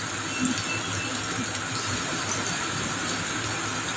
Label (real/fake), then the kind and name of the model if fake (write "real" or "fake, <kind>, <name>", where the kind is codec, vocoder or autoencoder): real